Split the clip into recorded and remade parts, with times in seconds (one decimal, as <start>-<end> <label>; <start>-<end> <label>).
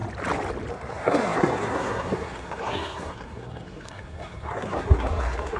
0.0-0.7 recorded; 0.7-5.6 remade